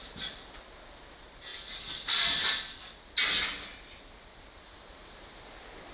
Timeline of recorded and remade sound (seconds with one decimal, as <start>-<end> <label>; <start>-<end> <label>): 0.0-5.9 recorded